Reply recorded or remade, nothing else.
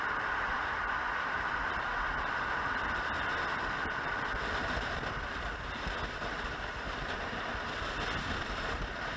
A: remade